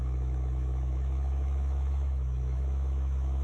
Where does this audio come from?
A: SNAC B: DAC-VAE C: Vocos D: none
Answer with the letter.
B